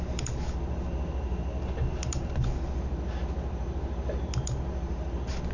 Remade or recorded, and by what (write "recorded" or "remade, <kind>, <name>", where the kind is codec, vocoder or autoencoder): recorded